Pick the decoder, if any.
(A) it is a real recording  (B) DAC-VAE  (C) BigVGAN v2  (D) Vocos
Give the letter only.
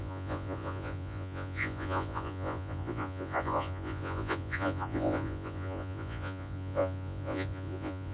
D